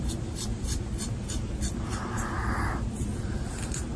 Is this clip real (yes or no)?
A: yes